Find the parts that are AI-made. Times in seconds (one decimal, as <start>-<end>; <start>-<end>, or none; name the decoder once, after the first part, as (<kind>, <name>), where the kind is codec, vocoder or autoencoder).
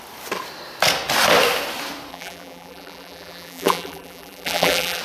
2.1-5.0 (vocoder, BigVGAN v2)